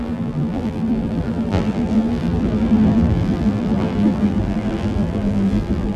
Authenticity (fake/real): fake